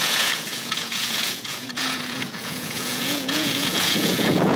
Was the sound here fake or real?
fake